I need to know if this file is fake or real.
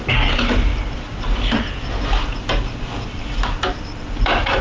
real